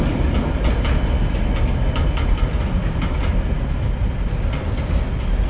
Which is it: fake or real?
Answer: real